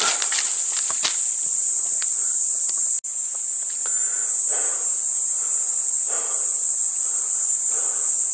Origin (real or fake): real